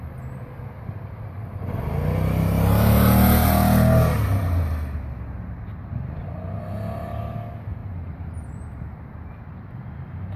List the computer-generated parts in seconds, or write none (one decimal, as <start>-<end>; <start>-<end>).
5.8-6.6; 7.8-9.1